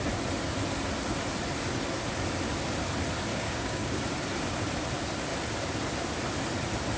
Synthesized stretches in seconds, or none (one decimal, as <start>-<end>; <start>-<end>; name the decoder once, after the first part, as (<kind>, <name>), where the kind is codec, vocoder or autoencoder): 3.3-4.0 (codec, DAC)